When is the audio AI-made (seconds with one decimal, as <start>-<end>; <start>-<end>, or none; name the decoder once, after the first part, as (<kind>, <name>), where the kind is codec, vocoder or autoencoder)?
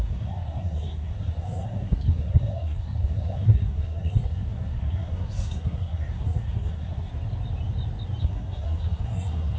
0.0-7.1 (codec, SNAC); 8.2-9.6